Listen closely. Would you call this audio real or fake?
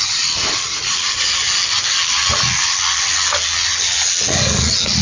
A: real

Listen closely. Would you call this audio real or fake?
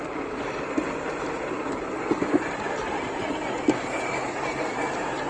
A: real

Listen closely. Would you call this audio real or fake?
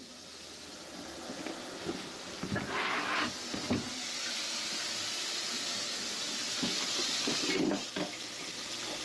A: real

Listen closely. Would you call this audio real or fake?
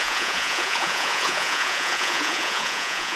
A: fake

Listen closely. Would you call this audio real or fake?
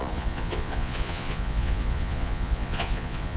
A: fake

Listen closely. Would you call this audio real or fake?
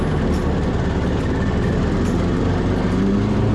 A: real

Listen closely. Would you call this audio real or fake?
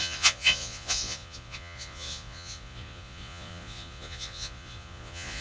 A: fake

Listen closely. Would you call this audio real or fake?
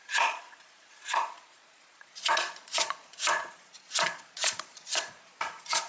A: fake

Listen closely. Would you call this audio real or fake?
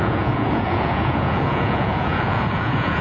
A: fake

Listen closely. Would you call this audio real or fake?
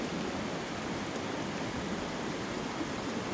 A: real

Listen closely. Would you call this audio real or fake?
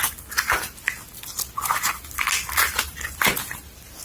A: real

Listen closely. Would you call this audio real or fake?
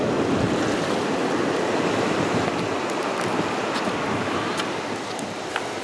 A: real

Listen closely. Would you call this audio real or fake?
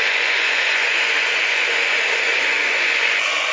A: fake